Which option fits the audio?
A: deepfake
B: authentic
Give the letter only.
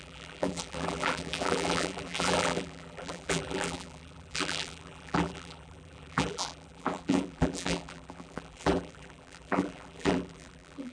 A